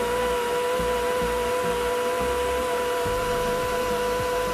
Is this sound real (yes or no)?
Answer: yes